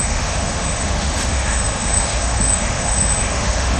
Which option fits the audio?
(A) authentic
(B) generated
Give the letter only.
B